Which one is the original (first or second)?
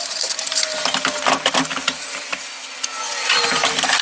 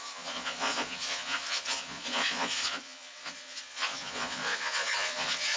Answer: first